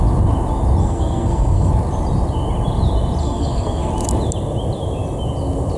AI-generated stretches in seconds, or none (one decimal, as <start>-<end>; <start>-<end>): 0.8-1.7; 3.2-3.9